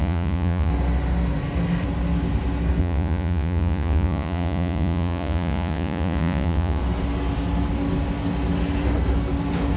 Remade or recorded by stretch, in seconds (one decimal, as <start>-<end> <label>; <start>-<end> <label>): 0.0-0.7 remade; 0.7-2.8 recorded; 2.8-6.8 remade; 6.8-9.8 recorded